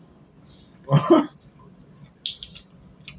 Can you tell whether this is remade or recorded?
recorded